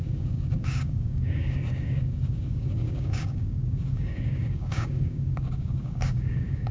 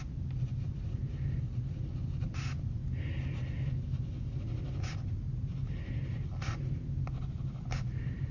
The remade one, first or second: first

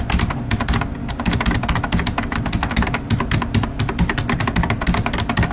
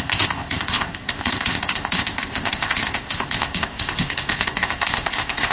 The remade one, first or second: second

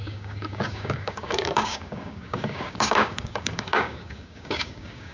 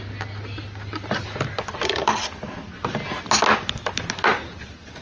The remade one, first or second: first